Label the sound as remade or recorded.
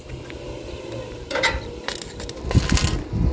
recorded